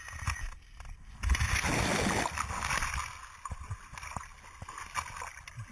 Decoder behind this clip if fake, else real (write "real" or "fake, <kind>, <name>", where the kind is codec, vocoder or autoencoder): real